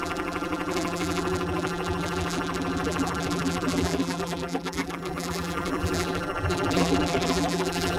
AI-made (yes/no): yes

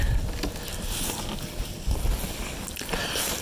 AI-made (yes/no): no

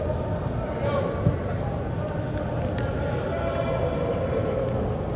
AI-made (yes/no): no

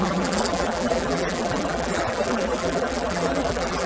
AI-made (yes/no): yes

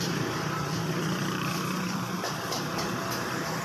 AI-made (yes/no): yes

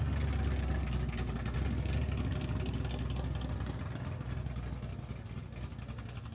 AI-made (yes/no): no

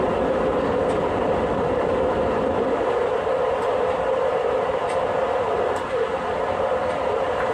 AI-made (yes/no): yes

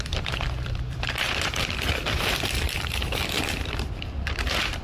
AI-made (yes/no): yes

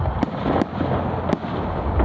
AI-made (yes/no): no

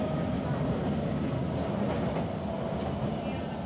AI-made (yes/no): no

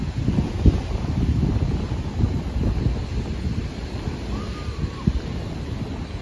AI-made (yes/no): no